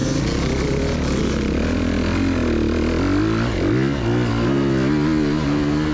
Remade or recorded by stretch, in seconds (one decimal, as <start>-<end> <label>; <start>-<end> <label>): 0.0-5.9 recorded